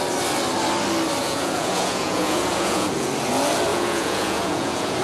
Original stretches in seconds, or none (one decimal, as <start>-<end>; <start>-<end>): 0.0-1.2; 3.1-3.7